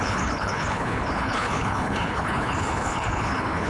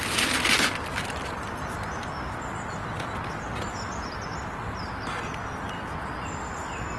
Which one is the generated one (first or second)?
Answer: first